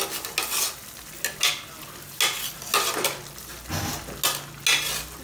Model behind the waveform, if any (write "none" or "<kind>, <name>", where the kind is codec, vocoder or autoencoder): none